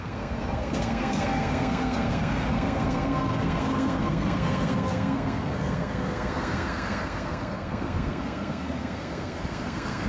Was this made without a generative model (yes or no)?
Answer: no